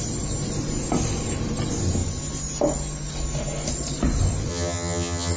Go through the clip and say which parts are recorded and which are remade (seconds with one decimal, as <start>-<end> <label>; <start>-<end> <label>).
0.0-4.5 recorded; 4.5-5.4 remade